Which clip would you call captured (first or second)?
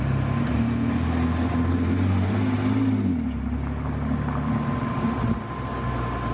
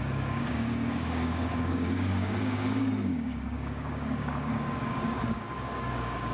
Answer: first